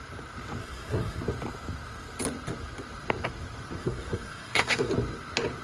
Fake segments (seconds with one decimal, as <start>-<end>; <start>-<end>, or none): 0.6-1.2; 3.8-4.9